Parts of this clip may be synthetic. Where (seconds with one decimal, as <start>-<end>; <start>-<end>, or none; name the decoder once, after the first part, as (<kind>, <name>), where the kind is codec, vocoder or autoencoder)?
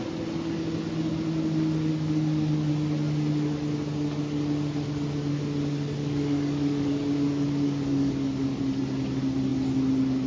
1.9-2.7 (codec, DAC); 6.0-8.6